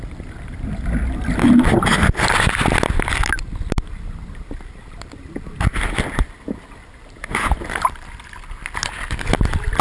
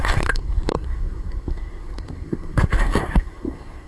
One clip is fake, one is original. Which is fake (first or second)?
second